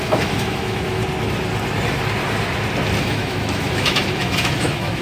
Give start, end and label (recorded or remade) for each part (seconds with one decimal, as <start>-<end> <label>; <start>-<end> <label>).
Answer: 0.0-1.0 remade; 1.0-3.0 recorded; 3.0-5.0 remade